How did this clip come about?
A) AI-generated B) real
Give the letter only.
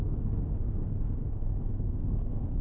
A